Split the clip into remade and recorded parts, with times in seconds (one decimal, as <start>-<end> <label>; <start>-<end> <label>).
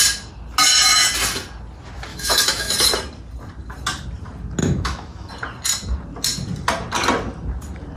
0.0-2.1 recorded; 2.1-2.7 remade; 2.7-4.6 recorded; 4.6-5.3 remade; 5.3-8.0 recorded